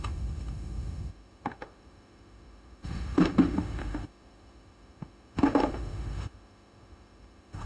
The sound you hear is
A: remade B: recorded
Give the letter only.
A